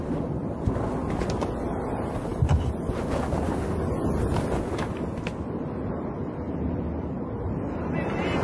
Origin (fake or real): real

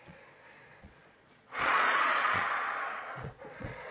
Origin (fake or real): fake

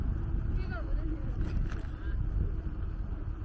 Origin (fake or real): real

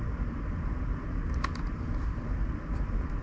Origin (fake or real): real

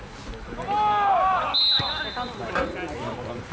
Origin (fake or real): real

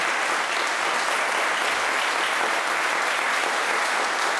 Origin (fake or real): real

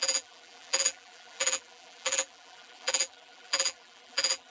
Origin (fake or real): fake